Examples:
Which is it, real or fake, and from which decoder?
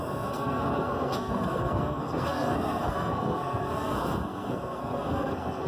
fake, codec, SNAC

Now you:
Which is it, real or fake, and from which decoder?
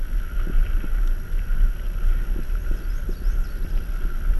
real